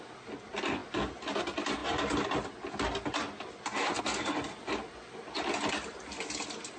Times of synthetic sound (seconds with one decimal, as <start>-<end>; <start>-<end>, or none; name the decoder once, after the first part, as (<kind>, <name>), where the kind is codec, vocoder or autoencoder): none